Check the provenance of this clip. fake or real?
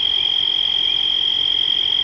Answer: real